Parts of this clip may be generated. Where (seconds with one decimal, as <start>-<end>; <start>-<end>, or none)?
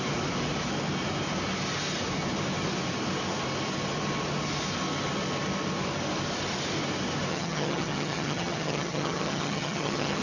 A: 7.3-10.2